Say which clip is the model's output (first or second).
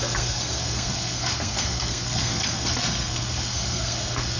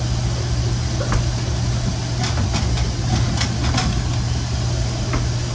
first